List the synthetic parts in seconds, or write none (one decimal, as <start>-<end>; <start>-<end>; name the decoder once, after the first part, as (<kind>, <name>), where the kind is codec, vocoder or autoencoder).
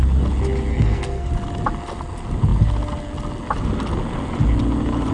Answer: 0.7-1.3 (codec, SNAC)